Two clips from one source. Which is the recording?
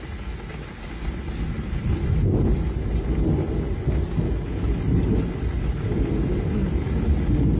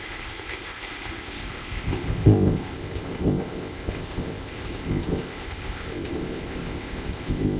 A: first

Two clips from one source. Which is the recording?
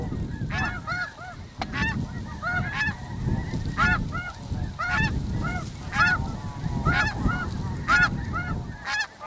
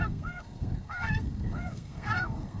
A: first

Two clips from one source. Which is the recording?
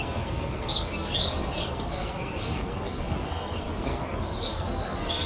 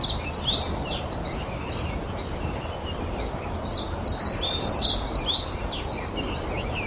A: second